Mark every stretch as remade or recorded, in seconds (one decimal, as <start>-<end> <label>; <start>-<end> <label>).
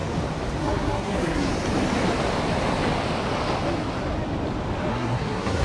0.0-0.6 recorded; 0.6-1.5 remade; 1.5-4.9 recorded; 4.9-5.6 remade